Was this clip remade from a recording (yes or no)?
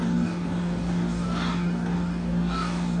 yes